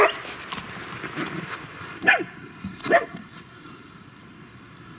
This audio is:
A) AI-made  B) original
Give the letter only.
B